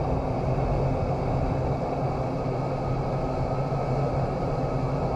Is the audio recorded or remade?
recorded